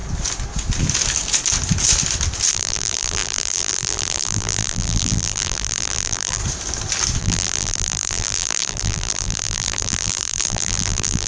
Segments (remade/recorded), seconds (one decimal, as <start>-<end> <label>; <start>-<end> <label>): 0.0-2.5 recorded; 2.5-6.4 remade; 6.4-7.2 recorded; 7.2-11.3 remade

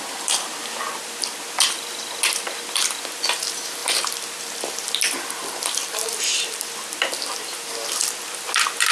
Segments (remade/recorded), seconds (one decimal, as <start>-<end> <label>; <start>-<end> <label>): 0.0-8.9 remade